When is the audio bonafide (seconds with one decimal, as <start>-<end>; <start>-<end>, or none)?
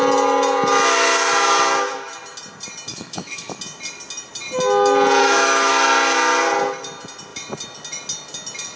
0.0-2.9; 3.6-5.2; 5.7-8.8